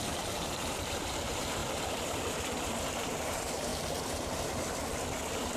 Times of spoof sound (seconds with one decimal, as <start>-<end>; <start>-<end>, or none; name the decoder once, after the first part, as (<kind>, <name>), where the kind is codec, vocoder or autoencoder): 0.0-3.7 (vocoder, BigVGAN v2)